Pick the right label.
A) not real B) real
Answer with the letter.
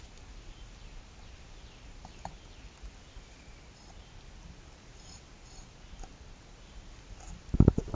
B